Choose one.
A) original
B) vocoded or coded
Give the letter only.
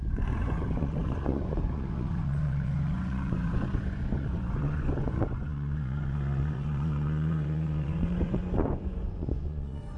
B